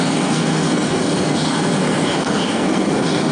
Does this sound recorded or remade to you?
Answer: remade